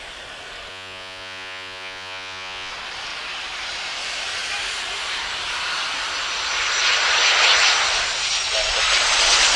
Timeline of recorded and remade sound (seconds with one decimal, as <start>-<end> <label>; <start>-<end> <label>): 0.0-0.7 recorded; 0.7-2.7 remade; 2.7-9.6 recorded